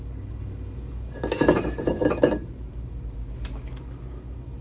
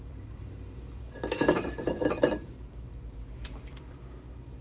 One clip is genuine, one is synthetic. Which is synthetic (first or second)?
second